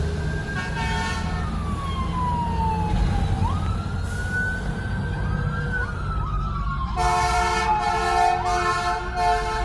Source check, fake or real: real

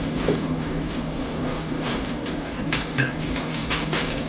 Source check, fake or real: fake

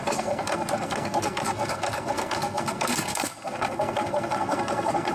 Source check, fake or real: fake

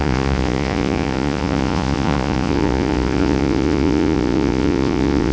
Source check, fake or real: fake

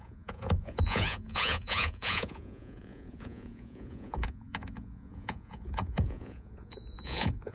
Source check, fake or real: fake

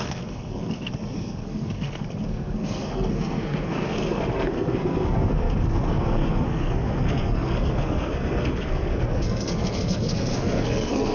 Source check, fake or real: fake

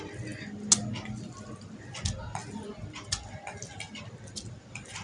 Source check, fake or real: real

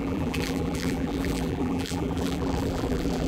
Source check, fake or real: fake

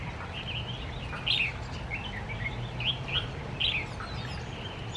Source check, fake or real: real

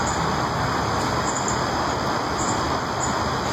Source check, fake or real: real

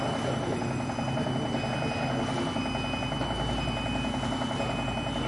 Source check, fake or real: real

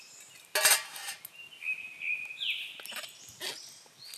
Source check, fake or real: real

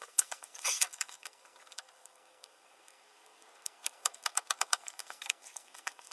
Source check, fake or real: fake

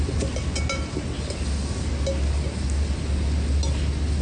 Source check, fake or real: real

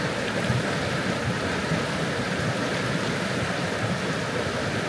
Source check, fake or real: real